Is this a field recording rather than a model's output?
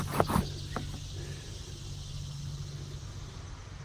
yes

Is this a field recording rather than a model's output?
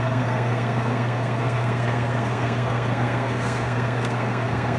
no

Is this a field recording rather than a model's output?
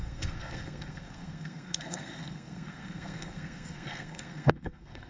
no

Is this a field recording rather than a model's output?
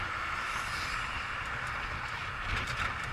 yes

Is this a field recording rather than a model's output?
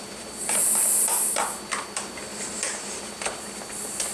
yes